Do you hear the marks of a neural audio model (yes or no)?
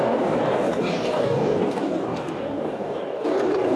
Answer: yes